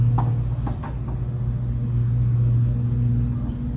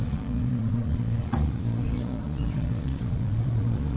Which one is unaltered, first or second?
first